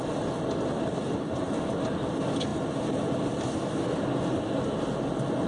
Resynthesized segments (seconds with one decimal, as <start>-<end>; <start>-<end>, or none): none